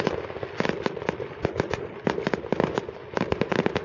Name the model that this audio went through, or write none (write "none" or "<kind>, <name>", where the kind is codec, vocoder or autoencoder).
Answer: none